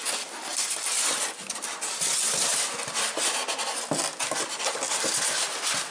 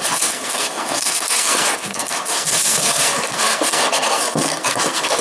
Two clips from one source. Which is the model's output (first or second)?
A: second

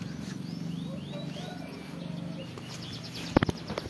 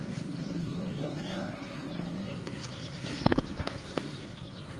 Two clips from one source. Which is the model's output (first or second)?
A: second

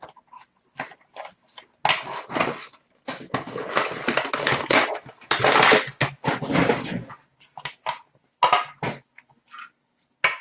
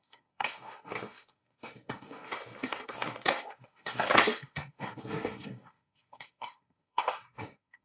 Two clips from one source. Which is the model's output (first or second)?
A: second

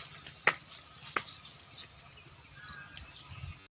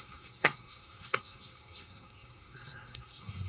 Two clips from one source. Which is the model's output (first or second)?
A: second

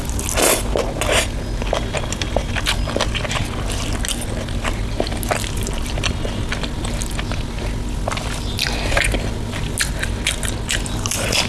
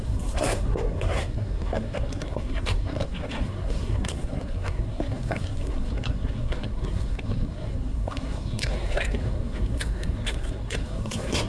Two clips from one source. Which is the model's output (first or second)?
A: second